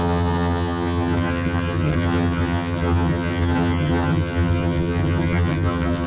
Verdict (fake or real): fake